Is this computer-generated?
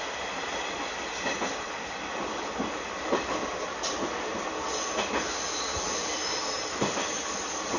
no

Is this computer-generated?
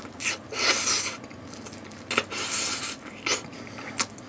no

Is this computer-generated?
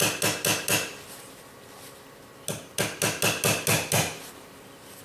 no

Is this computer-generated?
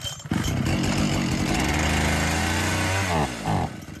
no